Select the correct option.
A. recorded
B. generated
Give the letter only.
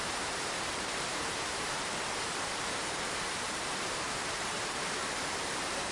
B